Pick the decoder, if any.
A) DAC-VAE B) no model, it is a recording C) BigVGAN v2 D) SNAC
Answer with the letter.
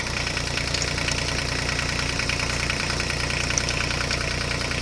C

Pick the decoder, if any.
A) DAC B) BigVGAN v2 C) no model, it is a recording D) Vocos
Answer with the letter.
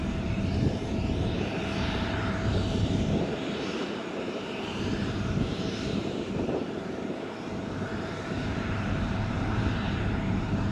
B